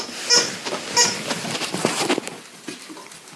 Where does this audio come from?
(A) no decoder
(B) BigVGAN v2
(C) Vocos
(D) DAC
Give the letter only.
A